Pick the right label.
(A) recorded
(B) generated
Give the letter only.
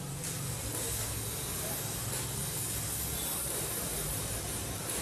A